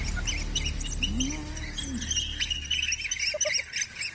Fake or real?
real